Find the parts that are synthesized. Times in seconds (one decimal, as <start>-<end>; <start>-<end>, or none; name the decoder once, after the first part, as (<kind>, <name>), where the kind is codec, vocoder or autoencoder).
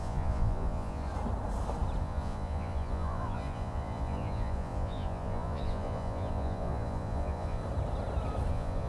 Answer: 0.0-1.1 (vocoder, Vocos); 2.0-7.6; 8.5-8.9